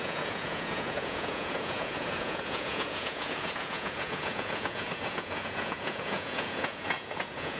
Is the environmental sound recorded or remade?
remade